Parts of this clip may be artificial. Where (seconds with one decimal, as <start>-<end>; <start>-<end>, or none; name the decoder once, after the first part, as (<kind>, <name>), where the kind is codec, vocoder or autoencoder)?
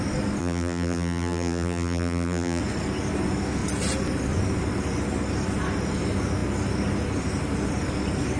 0.4-2.6 (vocoder, BigVGAN v2)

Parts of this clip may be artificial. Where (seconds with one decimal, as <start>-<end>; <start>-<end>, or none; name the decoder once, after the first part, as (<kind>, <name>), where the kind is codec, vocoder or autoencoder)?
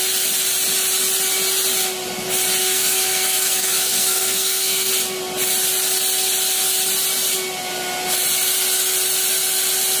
2.6-4.9 (codec, SNAC)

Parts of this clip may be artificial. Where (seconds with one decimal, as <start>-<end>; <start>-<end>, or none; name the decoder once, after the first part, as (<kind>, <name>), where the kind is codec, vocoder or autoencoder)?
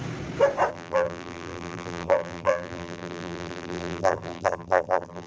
0.7-5.3 (vocoder, BigVGAN v2)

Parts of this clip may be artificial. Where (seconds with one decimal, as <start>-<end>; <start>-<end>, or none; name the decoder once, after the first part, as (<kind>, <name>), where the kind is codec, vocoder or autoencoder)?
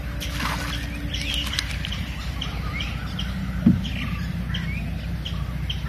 none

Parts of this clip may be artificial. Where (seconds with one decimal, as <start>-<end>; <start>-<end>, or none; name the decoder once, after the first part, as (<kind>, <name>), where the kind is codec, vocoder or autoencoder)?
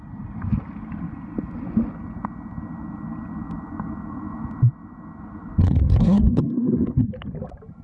5.6-7.1 (codec, SNAC)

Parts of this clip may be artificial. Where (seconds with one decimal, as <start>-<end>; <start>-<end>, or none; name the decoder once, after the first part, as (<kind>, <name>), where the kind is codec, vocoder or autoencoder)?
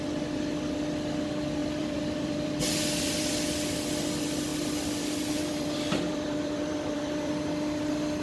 1.6-3.3 (vocoder, BigVGAN v2); 4.5-7.3